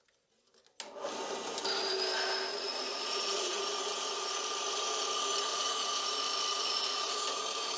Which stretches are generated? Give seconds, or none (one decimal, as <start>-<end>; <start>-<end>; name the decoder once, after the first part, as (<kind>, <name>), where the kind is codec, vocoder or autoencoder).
2.5-3.8 (vocoder, Vocos); 5.5-6.1; 6.5-7.2